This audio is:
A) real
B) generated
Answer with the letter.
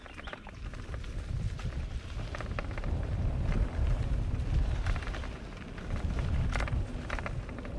A